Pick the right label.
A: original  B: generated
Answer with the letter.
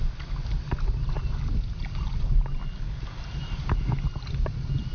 A